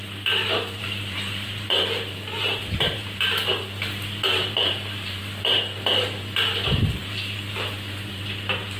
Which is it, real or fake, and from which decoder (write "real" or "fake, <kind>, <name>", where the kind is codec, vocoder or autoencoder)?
fake, vocoder, BigVGAN v2